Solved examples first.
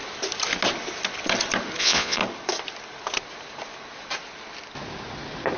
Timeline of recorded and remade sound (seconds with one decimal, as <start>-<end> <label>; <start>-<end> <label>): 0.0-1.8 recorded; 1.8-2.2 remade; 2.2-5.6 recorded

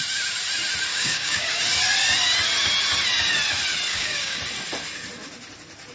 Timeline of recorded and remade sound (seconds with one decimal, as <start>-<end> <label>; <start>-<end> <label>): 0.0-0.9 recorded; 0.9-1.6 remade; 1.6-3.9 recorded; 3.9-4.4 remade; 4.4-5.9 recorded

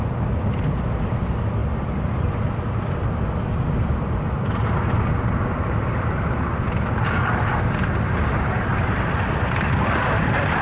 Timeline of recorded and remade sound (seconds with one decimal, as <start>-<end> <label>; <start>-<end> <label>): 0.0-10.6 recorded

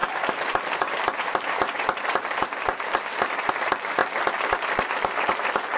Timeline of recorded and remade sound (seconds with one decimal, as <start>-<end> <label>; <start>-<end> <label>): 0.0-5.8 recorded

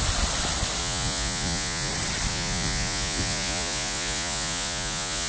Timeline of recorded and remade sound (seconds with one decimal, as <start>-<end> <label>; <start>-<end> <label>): 0.0-0.8 recorded; 0.8-1.9 remade; 1.9-2.3 recorded; 2.3-5.3 remade

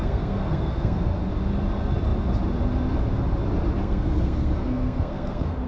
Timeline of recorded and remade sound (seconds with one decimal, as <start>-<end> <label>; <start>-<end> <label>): 0.0-1.2 remade; 1.2-3.8 recorded; 3.8-5.7 remade

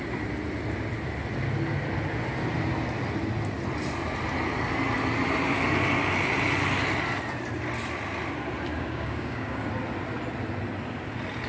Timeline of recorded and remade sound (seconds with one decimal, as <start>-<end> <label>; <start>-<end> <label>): 0.0-8.7 recorded; 8.7-9.7 remade; 9.7-11.5 recorded

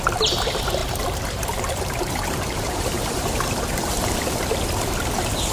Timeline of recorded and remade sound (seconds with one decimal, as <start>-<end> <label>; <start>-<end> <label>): 0.0-0.8 recorded; 0.8-4.1 remade; 4.1-5.5 recorded